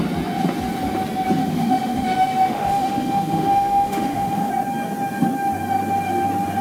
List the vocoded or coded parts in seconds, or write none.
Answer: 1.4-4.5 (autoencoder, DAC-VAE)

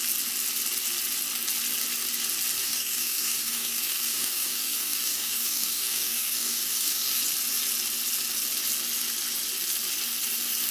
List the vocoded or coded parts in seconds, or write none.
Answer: 2.6-7.2 (codec, DAC)